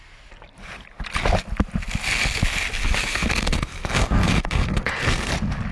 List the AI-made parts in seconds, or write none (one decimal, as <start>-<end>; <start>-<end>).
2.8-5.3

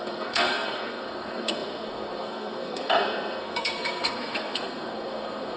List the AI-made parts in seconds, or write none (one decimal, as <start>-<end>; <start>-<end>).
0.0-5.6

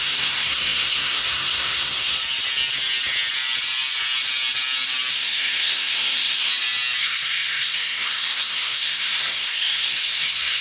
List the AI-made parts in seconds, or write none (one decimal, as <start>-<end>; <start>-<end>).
0.0-2.1; 5.1-6.5; 7.0-10.6

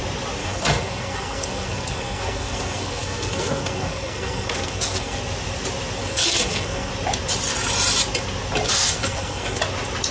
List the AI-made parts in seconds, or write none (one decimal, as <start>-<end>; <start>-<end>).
0.4-5.2; 6.0-6.9; 8.7-9.6

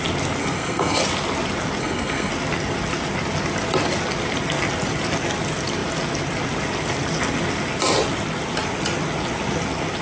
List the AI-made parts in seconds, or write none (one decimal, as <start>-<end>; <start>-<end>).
0.4-1.0; 1.8-2.3

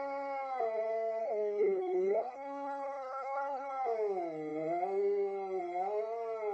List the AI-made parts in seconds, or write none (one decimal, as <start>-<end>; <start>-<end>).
1.2-3.7

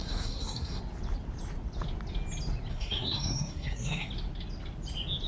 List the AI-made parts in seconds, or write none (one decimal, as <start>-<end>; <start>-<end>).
0.0-0.8; 2.7-4.1